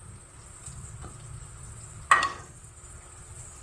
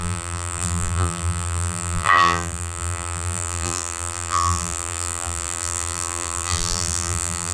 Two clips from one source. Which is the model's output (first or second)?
second